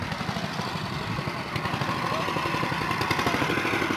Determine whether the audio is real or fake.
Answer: real